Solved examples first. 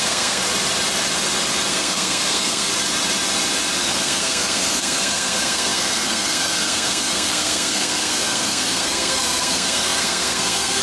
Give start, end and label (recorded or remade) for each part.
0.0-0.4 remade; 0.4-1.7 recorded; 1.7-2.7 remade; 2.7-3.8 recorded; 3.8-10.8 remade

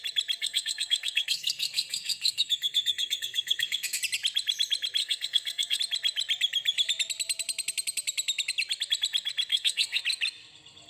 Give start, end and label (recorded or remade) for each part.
0.0-0.4 recorded; 0.4-4.0 remade; 4.0-5.0 recorded; 5.0-5.8 remade; 5.8-9.5 recorded; 9.5-10.0 remade; 10.0-10.9 recorded

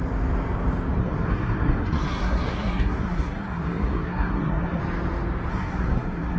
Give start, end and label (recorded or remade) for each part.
0.0-1.0 recorded; 1.0-4.8 remade; 4.8-5.5 recorded; 5.5-6.4 remade